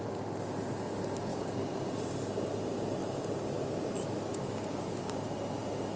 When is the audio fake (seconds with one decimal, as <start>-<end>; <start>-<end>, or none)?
1.3-1.9; 4.3-4.8